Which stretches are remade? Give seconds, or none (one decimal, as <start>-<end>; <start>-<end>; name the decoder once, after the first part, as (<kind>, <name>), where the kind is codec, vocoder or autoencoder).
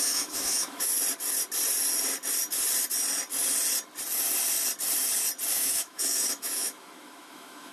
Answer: 0.0-0.9 (autoencoder, DAC-VAE); 5.5-7.7